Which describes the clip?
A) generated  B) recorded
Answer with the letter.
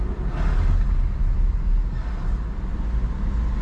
B